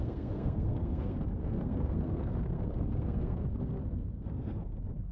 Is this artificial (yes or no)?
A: yes